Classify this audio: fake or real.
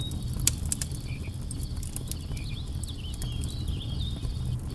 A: real